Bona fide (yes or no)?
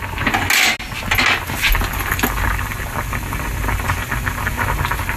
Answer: yes